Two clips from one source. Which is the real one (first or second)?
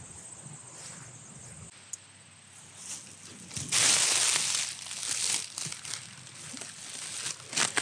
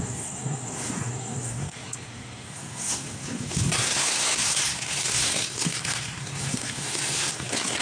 first